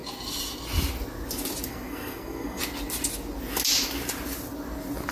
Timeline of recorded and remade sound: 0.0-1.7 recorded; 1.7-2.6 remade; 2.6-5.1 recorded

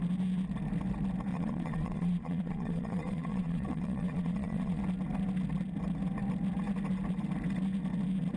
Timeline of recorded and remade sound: 0.0-1.3 recorded; 1.3-4.8 remade; 4.8-8.4 recorded

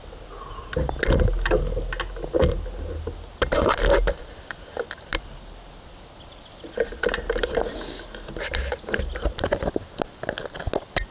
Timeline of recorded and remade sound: 0.0-11.1 recorded

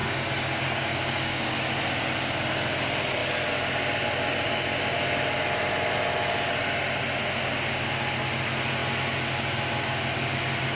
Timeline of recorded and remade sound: 0.0-1.5 remade; 1.5-10.8 recorded

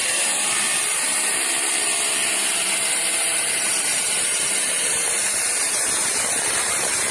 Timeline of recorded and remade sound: 0.0-7.1 remade

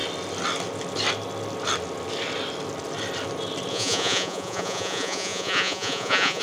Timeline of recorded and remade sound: 0.0-3.7 recorded; 3.7-6.4 remade